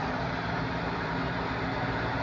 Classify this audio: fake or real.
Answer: fake